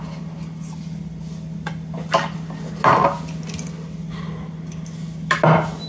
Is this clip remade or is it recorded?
recorded